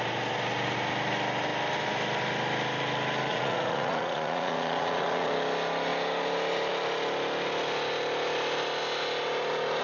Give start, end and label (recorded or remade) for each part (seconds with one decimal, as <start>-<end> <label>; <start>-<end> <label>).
0.0-3.3 recorded; 3.3-5.3 remade; 5.3-9.8 recorded